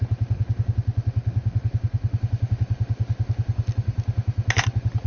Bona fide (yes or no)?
yes